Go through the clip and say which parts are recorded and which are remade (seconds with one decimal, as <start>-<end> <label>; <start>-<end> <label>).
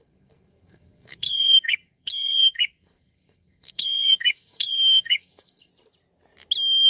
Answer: 0.0-5.7 remade; 5.7-6.9 recorded